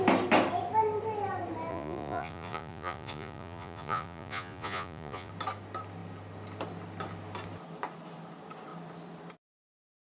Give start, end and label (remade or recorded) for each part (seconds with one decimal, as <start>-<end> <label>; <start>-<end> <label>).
0.0-1.7 recorded; 1.7-5.3 remade; 5.3-10.0 recorded